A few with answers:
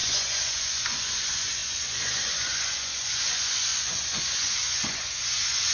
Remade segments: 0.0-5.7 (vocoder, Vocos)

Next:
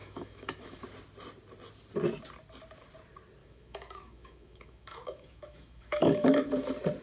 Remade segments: 0.0-0.8 (autoencoder, DAC-VAE); 3.4-6.5